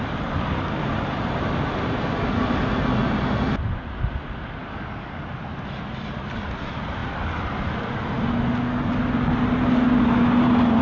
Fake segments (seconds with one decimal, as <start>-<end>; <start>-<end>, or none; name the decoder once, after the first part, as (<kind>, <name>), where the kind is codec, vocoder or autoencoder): 4.6-5.2 (codec, DAC)